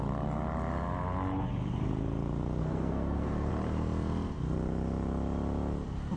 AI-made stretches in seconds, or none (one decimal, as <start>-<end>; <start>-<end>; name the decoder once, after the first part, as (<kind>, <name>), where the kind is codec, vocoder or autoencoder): 2.6-3.5 (codec, SNAC)